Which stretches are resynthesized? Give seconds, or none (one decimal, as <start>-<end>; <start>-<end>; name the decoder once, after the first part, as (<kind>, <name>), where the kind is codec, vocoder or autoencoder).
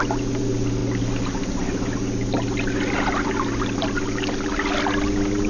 none